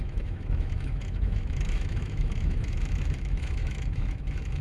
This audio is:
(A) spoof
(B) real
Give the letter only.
A